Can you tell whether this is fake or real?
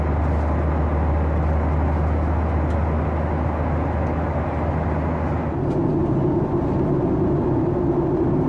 real